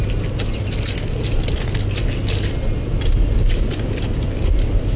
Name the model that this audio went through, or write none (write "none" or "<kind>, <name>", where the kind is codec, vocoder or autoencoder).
none